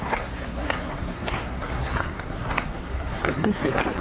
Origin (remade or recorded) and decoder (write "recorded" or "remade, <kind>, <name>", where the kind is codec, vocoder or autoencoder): remade, codec, SNAC